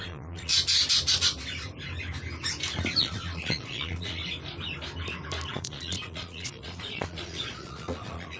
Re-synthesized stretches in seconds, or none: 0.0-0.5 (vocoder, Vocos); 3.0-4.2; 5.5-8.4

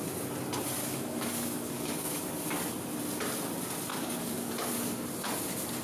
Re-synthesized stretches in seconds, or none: 0.8-2.2 (codec, DAC); 3.9-4.5

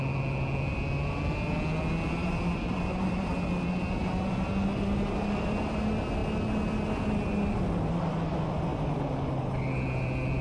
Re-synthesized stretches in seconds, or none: none

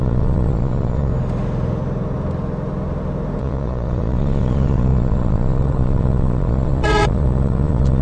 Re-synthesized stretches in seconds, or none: 0.0-1.1 (vocoder, Vocos); 3.4-8.0